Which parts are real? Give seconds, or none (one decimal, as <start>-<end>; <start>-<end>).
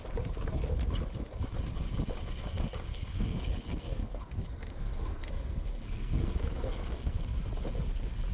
0.0-2.9; 7.4-8.3